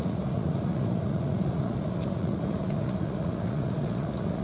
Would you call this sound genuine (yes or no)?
no